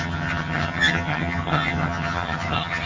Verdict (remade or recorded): remade